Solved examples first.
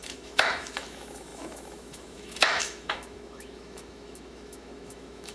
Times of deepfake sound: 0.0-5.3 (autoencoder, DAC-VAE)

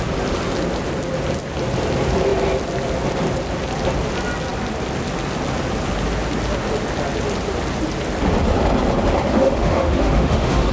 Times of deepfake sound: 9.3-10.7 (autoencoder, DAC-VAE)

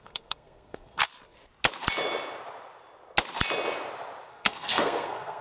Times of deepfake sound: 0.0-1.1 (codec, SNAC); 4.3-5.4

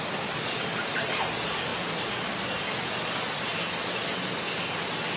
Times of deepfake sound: none

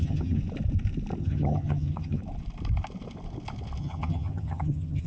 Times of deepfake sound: 0.0-0.4 (vocoder, HiFi-GAN); 1.2-2.2; 3.8-5.1

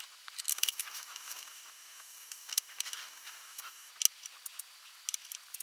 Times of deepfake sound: 0.5-3.9 (codec, DAC)